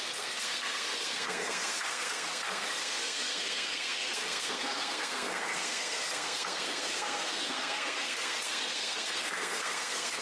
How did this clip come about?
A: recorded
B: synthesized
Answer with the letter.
B